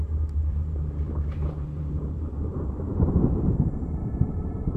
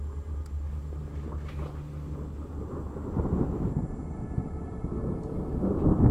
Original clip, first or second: second